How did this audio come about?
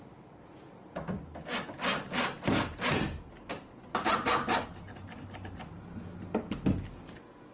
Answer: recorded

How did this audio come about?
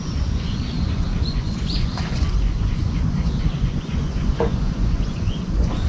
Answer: remade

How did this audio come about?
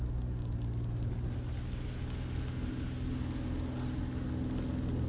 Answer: recorded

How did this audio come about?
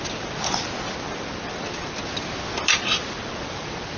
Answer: recorded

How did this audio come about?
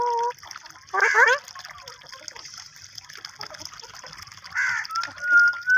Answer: recorded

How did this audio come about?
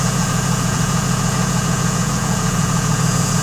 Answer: remade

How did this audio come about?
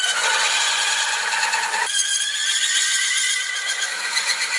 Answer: remade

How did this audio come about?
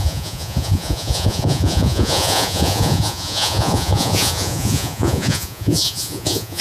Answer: remade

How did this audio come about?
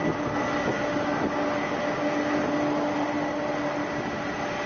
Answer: recorded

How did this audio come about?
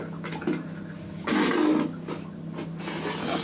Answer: recorded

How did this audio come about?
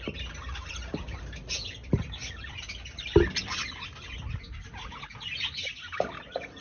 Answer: recorded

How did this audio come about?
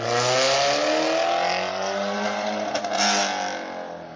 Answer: recorded